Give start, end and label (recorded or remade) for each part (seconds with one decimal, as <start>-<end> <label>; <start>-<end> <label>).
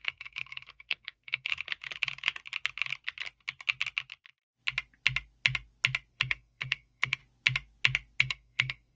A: 0.0-1.5 remade; 1.5-6.1 recorded; 6.1-7.2 remade; 7.2-8.2 recorded; 8.2-9.0 remade